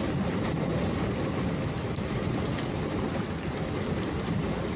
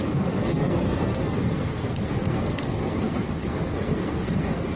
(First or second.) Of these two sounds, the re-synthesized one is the second